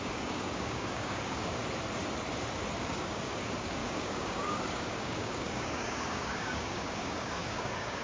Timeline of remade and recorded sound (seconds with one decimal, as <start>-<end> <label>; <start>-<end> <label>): 0.0-1.6 remade; 1.6-2.8 recorded; 2.8-8.0 remade